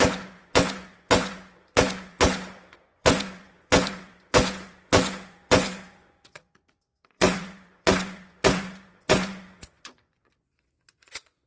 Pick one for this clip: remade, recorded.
remade